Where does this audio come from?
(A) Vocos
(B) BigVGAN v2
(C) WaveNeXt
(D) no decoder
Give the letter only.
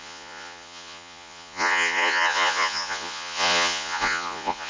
A